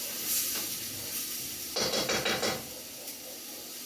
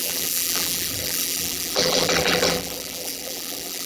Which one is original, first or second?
first